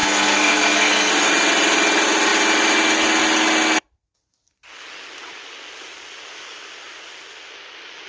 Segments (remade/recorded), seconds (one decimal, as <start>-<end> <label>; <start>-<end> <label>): 0.0-1.1 remade; 1.1-8.1 recorded